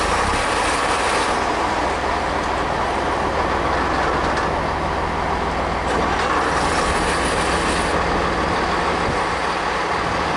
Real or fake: real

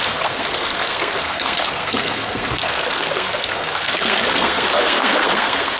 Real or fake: fake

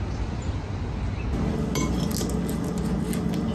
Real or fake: real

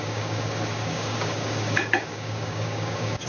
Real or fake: fake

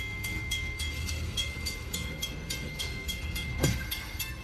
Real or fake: fake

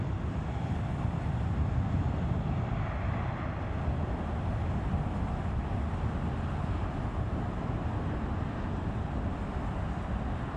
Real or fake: real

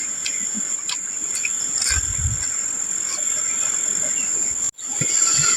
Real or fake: real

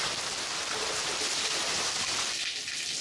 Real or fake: real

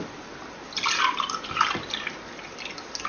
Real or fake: real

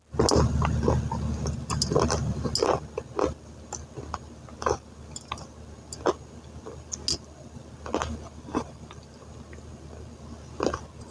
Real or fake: real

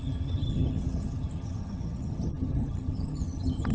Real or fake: fake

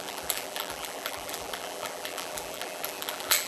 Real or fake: fake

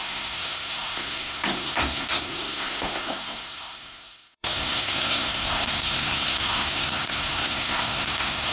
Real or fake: fake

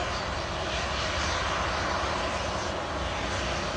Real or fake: real